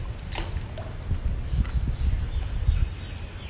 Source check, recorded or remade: recorded